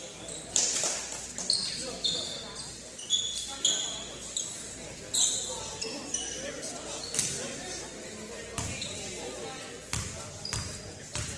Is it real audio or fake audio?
real